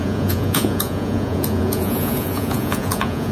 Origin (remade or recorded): remade